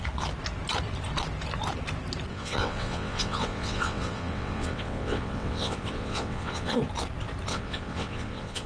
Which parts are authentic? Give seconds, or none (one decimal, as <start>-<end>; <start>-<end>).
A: 0.0-2.3; 6.8-7.5